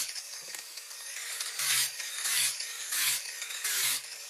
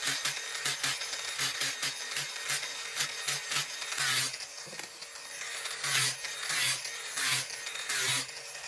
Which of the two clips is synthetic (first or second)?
first